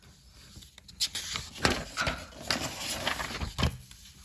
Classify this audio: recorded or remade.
recorded